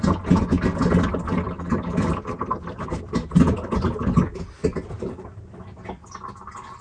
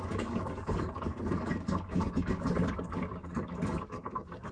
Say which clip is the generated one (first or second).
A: second